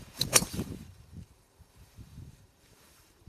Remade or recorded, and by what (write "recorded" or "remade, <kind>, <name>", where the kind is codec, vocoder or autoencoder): remade, vocoder, BigVGAN v2